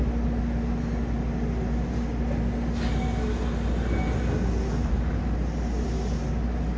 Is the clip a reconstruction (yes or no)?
no